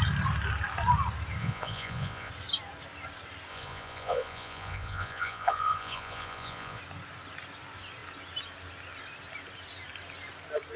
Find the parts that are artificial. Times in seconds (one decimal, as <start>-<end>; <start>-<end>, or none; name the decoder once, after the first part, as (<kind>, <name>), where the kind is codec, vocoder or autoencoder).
1.4-2.3 (vocoder, Vocos); 3.5-6.8